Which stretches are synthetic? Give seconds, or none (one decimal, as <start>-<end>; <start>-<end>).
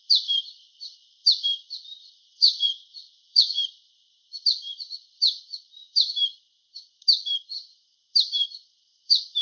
2.0-3.6